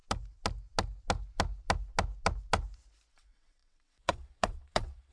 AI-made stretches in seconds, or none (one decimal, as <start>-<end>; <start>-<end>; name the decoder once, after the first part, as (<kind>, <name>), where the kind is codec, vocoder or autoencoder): 3.1-5.1 (vocoder, WaveNeXt)